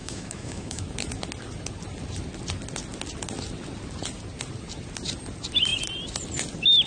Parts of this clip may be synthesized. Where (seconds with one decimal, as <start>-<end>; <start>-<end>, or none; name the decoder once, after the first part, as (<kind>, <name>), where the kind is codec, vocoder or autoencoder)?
0.0-0.8 (autoencoder, DAC-VAE)